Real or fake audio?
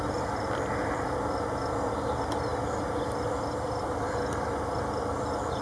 real